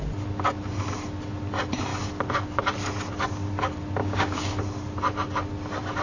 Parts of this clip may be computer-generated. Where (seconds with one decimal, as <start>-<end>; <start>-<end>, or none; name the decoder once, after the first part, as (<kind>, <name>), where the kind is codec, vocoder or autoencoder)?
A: 4.0-4.6 (codec, DAC)